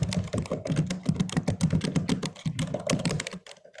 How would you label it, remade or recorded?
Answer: recorded